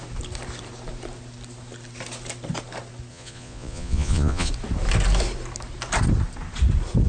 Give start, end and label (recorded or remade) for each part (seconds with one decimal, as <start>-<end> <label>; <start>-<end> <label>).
0.0-3.1 recorded; 3.1-4.5 remade; 4.5-7.1 recorded